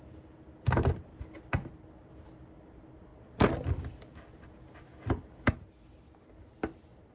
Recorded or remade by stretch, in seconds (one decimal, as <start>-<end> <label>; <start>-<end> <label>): 0.0-7.1 recorded